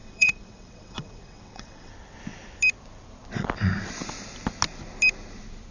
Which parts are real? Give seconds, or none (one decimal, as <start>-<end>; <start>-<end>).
1.9-5.7